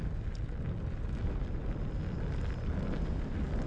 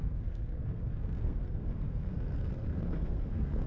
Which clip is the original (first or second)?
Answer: first